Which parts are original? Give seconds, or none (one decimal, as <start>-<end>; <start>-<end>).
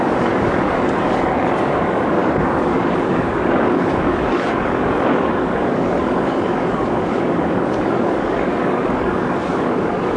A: none